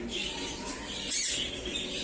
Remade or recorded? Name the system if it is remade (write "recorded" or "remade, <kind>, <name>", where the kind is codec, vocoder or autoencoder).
recorded